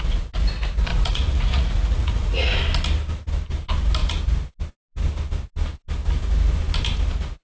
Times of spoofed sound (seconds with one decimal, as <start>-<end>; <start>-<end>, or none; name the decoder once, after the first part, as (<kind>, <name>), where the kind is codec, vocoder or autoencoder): 0.9-2.6 (vocoder, Vocos)